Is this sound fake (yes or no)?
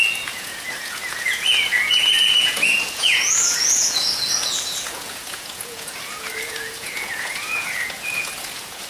yes